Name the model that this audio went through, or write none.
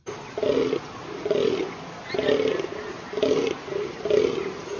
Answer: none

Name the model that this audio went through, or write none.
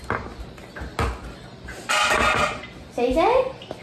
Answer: none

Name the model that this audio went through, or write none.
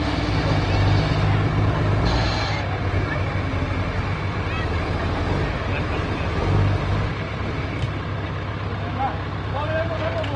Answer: none